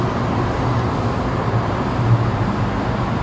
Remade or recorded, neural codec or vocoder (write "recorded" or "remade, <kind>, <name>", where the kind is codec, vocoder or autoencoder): recorded